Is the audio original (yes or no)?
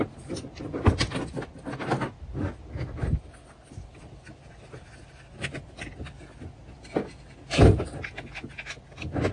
yes